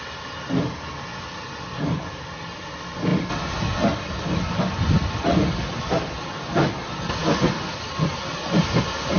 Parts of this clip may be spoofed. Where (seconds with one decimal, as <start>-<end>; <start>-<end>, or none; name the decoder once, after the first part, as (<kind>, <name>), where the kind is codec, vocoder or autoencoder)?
none